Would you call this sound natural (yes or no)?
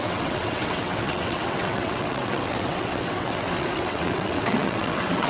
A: no